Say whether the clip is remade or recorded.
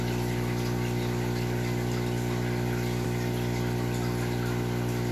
recorded